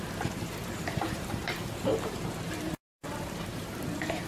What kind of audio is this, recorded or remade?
remade